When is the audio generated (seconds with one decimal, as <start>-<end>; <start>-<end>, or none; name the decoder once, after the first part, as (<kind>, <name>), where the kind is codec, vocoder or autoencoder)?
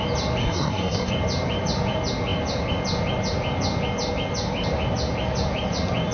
0.4-1.1 (codec, SNAC)